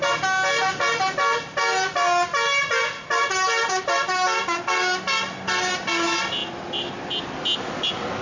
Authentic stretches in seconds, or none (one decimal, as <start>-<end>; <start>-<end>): 0.0-8.2